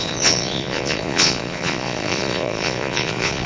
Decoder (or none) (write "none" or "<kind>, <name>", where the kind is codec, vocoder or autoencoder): vocoder, Vocos